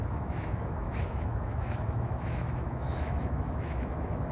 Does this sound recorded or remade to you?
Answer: remade